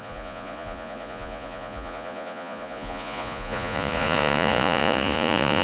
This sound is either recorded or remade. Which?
remade